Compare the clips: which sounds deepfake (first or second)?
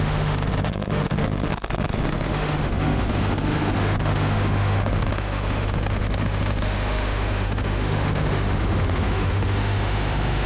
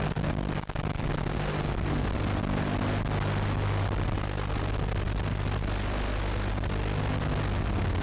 first